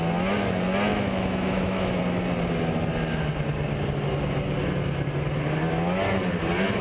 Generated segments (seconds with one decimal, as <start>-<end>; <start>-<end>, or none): 0.9-2.0